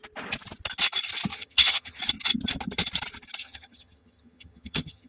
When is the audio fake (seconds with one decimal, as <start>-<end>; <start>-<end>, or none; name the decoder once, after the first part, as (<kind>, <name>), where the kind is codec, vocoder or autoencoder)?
1.3-2.0 (vocoder, HiFi-GAN); 3.4-5.1